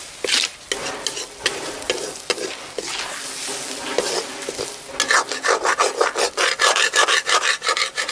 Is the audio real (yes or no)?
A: yes